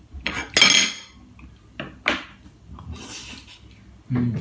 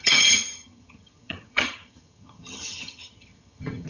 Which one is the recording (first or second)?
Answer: first